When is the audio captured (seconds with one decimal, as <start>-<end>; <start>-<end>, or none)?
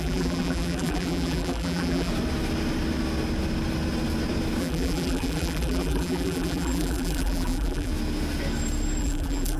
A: 2.1-4.6; 7.9-9.0